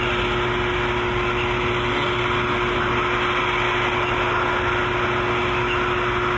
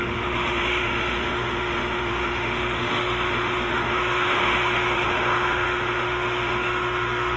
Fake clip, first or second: second